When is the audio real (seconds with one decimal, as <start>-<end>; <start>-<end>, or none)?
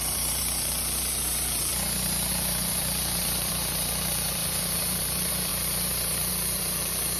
1.7-2.3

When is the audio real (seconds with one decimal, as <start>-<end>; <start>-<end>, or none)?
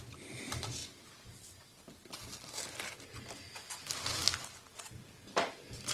0.0-5.9